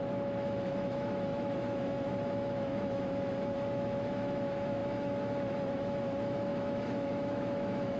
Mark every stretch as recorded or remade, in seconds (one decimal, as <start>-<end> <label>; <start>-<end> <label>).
0.0-8.0 remade